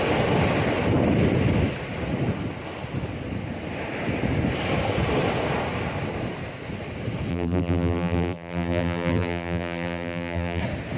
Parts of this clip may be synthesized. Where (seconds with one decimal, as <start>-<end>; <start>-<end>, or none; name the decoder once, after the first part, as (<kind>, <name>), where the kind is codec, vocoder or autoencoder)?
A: 7.3-10.6 (vocoder, BigVGAN v2)